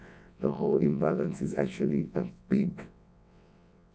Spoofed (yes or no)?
yes